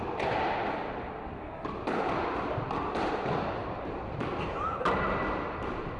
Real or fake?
real